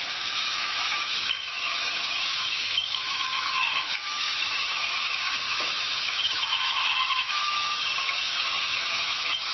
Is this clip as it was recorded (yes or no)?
no